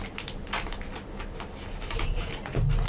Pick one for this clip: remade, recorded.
recorded